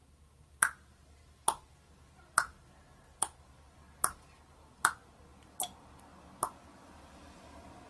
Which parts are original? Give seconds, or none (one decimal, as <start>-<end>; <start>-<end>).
0.0-7.9